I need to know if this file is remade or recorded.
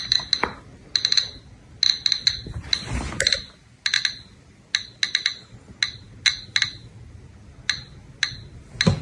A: recorded